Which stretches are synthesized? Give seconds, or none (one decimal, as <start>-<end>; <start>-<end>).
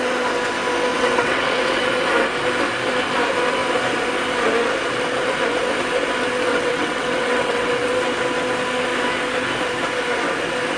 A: 0.9-1.8; 6.5-7.9